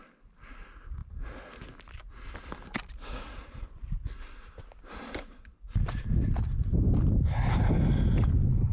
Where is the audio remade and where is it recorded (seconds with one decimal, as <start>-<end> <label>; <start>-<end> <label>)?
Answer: 0.0-8.7 recorded